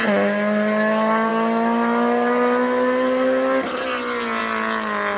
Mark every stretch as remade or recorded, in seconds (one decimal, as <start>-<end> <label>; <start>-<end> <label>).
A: 0.0-5.2 recorded